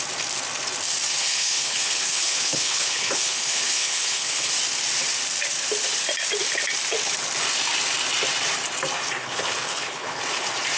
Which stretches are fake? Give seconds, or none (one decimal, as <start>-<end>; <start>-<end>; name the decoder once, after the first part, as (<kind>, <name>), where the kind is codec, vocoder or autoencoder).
1.2-4.5 (codec, HILCodec); 9.2-10.2